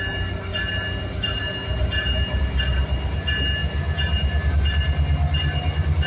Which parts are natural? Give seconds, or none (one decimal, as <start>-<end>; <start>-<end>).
0.0-6.1